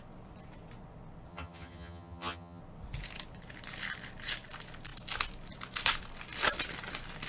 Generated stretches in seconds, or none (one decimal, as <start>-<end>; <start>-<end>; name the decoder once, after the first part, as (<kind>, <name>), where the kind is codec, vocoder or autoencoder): 1.3-2.6 (vocoder, HiFi-GAN)